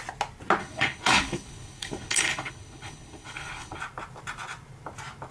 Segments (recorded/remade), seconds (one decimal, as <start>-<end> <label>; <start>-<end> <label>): 0.0-0.6 recorded; 0.6-3.8 remade; 3.8-5.3 recorded